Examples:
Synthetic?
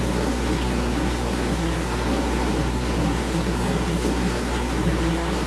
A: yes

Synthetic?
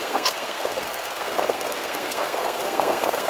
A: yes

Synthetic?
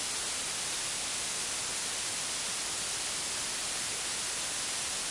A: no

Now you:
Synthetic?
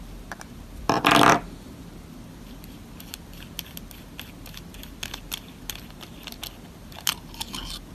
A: no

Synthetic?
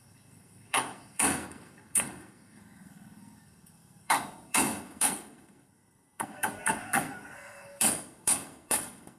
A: yes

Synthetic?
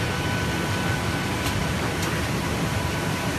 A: no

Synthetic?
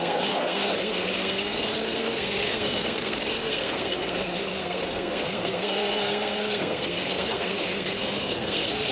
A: yes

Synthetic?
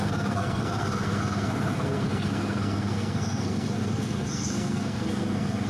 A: yes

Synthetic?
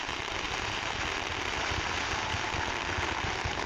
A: no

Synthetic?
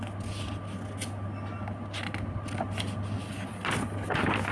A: no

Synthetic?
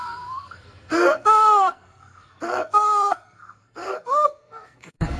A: yes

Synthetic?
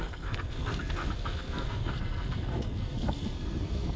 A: yes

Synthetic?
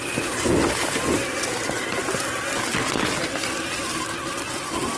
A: no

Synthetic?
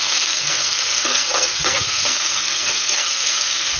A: yes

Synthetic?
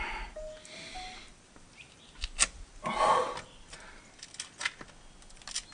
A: no